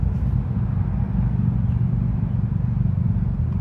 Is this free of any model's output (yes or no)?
yes